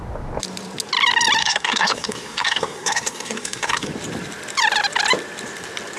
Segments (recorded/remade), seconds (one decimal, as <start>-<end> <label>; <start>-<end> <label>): 0.0-1.4 recorded; 1.4-3.9 remade; 3.9-6.0 recorded